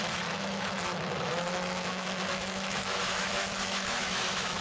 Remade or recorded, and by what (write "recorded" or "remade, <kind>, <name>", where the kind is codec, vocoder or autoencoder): remade, autoencoder, DAC-VAE